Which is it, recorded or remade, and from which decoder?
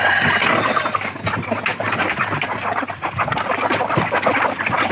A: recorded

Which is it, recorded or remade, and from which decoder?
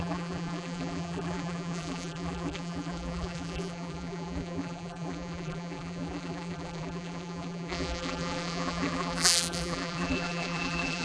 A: remade, vocoder, BigVGAN v2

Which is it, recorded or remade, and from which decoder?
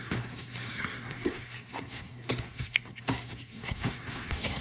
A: remade, codec, SNAC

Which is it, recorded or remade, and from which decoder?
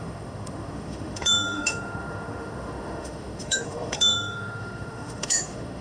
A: remade, autoencoder, DAC-VAE